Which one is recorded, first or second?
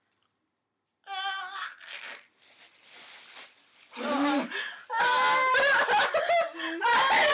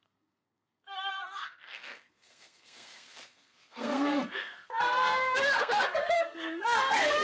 first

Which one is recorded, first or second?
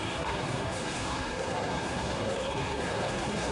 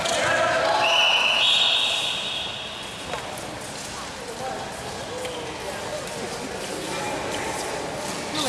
second